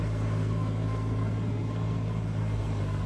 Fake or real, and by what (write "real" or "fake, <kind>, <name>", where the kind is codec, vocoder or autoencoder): fake, codec, SNAC